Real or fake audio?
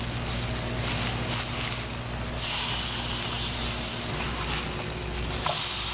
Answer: real